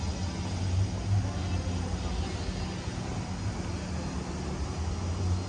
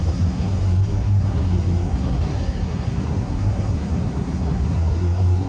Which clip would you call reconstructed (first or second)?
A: second